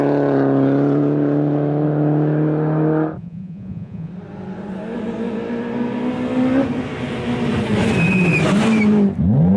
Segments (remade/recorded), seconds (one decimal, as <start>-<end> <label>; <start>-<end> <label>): 0.0-3.2 recorded; 3.2-4.1 remade; 4.1-9.6 recorded